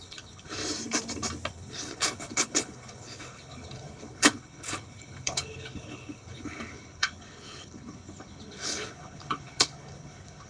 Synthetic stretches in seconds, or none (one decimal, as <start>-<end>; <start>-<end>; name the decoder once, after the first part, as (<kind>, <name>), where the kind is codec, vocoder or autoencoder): 0.0-0.6 (codec, HILCodec); 1.5-10.5